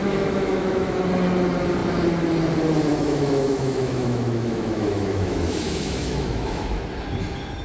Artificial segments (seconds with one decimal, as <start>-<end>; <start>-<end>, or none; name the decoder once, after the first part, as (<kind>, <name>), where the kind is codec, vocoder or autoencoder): 0.0-1.0 (autoencoder, DAC-VAE); 2.9-6.8